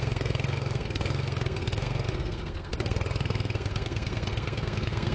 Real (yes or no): no